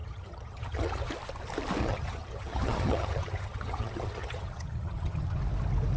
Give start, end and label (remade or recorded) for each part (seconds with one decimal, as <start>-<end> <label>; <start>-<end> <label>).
0.0-1.1 remade; 1.1-1.8 recorded; 1.8-5.4 remade; 5.4-6.0 recorded

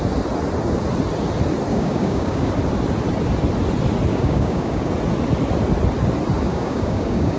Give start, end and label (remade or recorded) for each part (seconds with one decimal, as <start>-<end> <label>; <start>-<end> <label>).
0.0-1.7 recorded; 1.7-2.5 remade; 2.5-4.1 recorded; 4.1-4.9 remade; 4.9-6.5 recorded; 6.5-7.4 remade

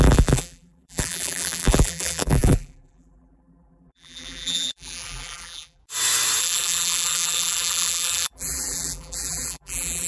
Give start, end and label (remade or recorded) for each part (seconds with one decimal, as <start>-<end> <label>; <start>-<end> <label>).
0.0-5.8 remade; 5.8-6.4 recorded; 6.4-10.1 remade

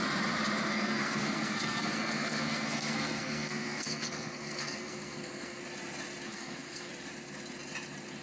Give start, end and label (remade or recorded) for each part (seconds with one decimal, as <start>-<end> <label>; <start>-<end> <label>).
0.0-0.7 recorded; 0.7-5.6 remade; 5.6-6.3 recorded; 6.3-6.9 remade; 6.9-8.2 recorded

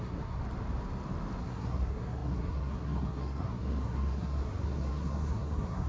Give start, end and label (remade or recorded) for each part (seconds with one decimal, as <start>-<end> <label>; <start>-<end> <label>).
0.0-0.4 remade; 0.4-1.4 recorded; 1.4-5.9 remade